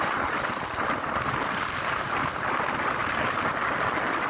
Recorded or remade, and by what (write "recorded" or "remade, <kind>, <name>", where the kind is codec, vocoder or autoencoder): recorded